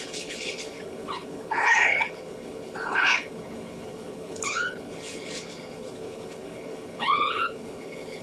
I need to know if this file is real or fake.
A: fake